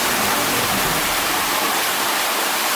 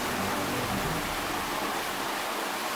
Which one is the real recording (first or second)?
second